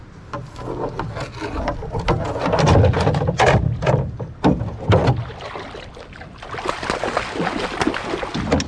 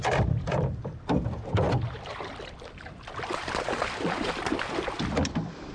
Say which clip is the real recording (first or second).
first